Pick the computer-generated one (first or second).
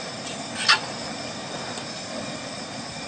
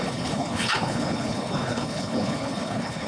second